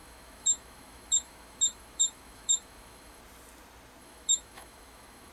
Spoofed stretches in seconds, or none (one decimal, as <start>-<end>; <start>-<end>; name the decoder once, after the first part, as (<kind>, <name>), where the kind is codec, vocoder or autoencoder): 0.0-3.2 (autoencoder, DAC-VAE); 4.0-5.3